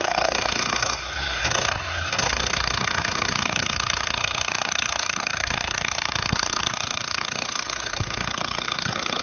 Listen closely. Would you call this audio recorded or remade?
remade